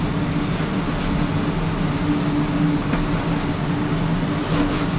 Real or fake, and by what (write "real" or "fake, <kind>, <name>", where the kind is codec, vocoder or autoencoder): real